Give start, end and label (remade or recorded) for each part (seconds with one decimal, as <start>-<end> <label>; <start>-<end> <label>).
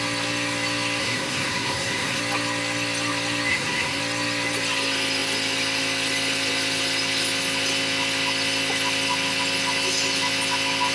0.0-1.0 recorded; 1.0-2.2 remade; 2.2-3.5 recorded; 3.5-4.0 remade; 4.0-10.9 recorded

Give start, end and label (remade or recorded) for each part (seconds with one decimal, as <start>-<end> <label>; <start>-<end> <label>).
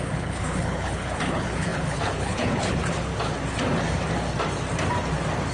0.0-3.1 remade; 3.1-5.5 recorded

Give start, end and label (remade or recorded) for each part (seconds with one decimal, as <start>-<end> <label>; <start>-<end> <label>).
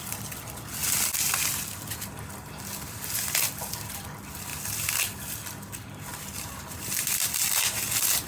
0.0-8.3 recorded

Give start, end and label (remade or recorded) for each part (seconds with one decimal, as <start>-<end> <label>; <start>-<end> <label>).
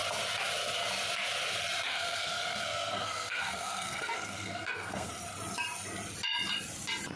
0.0-1.9 recorded; 1.9-5.1 remade; 5.1-7.2 recorded